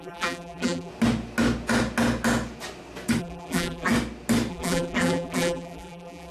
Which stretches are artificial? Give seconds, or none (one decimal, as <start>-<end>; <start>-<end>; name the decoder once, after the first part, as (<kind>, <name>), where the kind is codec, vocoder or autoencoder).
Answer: 0.0-0.9 (vocoder, BigVGAN v2); 3.2-3.9; 4.5-6.3